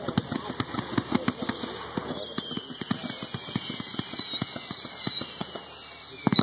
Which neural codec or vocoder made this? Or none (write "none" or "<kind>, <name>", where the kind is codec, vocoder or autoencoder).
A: none